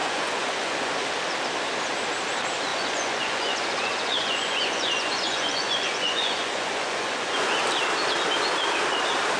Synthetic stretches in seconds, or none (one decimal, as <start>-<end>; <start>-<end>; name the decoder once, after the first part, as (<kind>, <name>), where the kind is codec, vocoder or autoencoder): 0.0-0.9 (vocoder, Vocos); 2.7-7.6